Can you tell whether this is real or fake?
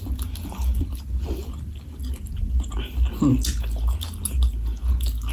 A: real